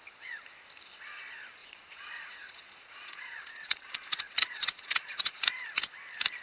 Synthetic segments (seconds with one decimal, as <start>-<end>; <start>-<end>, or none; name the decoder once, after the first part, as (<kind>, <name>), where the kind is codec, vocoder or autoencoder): 1.6-5.4 (vocoder, Vocos)